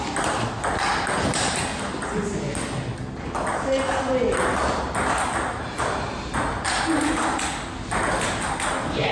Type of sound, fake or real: real